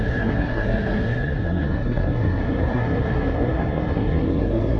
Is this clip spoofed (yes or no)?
yes